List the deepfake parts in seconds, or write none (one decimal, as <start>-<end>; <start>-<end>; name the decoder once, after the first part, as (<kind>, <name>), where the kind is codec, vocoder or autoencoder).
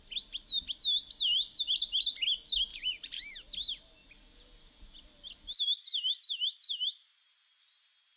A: 2.7-3.3 (vocoder, BigVGAN v2)